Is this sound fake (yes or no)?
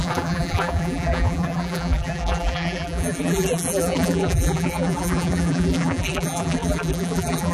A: yes